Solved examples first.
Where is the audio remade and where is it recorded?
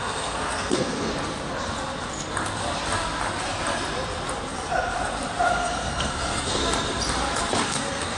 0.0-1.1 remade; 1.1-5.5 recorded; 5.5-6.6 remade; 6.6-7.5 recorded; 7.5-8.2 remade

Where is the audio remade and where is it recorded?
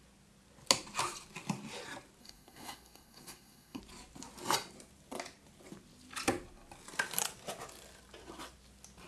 0.0-2.2 recorded; 2.2-3.8 remade; 3.8-9.1 recorded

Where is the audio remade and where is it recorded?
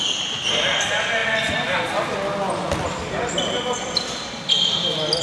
0.0-5.2 recorded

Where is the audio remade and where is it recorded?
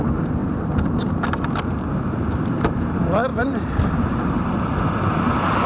0.0-3.3 recorded; 3.3-4.7 remade; 4.7-5.7 recorded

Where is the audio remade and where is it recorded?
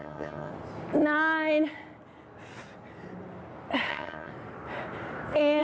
0.0-0.5 remade; 0.5-3.9 recorded; 3.9-4.3 remade; 4.3-5.6 recorded